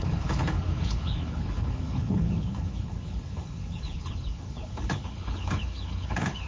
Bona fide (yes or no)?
no